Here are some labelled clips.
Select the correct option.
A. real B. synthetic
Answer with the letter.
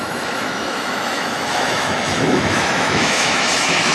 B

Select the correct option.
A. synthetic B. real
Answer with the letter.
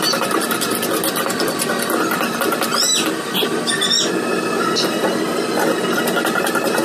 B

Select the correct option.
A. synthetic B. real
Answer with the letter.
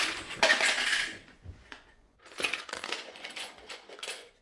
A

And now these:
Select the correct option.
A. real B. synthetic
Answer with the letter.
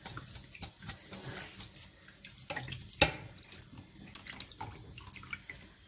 A